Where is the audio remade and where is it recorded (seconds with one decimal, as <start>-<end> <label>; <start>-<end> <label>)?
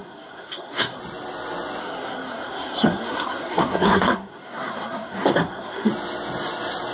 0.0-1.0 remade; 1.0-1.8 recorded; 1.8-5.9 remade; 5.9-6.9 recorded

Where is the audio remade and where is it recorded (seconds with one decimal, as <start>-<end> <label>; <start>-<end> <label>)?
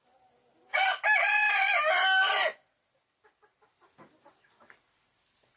0.0-5.6 recorded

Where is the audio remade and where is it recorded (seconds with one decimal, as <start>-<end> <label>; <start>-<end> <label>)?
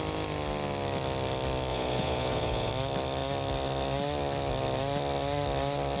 0.0-1.7 recorded; 1.7-2.7 remade; 2.7-6.0 recorded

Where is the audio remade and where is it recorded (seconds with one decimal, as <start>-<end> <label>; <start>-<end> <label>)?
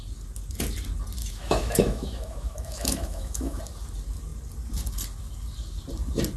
0.0-1.2 recorded; 1.2-3.6 remade; 3.6-6.4 recorded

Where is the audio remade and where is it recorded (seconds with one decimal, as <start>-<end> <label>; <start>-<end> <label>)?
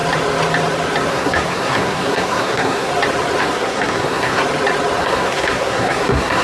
0.0-1.1 recorded; 1.1-2.9 remade; 2.9-3.4 recorded; 3.4-4.4 remade; 4.4-5.0 recorded; 5.0-6.4 remade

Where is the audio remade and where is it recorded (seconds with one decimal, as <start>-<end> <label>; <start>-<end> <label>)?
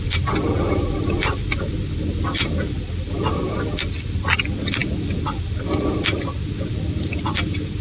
0.0-7.8 recorded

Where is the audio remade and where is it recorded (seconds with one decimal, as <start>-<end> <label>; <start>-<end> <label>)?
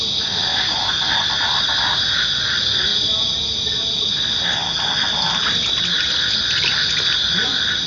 0.0-7.9 recorded